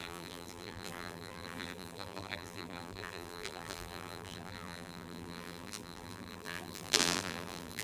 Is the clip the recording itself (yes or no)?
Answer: no